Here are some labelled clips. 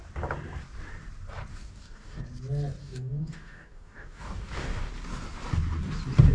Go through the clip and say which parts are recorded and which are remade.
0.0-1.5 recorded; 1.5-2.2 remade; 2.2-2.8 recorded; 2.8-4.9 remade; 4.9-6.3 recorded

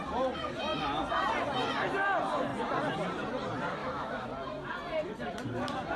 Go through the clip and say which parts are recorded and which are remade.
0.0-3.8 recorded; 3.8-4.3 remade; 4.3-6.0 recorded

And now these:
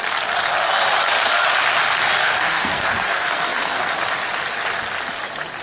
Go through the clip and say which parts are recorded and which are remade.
0.0-2.2 recorded; 2.2-3.9 remade; 3.9-5.6 recorded